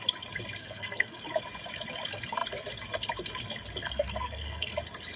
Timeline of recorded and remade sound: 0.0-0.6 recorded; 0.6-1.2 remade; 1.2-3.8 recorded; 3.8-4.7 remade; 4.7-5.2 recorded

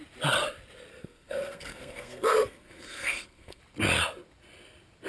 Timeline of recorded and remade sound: 0.0-1.0 recorded; 1.0-3.6 remade; 3.6-5.1 recorded

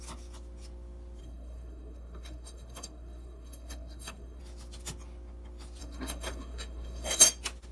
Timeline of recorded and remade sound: 0.0-1.2 recorded; 1.2-4.4 remade; 4.4-5.8 recorded; 5.8-7.2 remade; 7.2-7.7 recorded

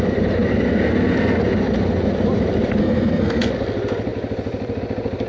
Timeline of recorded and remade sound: 0.0-2.8 recorded; 2.8-3.5 remade; 3.5-5.3 recorded

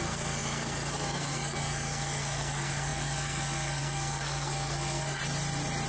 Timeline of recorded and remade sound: 0.0-5.2 remade; 5.2-5.9 recorded

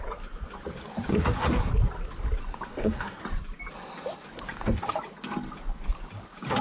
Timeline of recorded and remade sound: 0.0-1.1 recorded; 1.1-1.7 remade; 1.7-2.7 recorded; 2.7-3.2 remade; 3.2-6.6 recorded

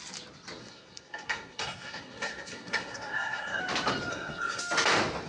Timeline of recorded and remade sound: 0.0-0.6 recorded; 0.6-3.6 remade; 3.6-4.1 recorded; 4.1-4.6 remade; 4.6-5.3 recorded